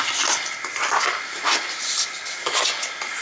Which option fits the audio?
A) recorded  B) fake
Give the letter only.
A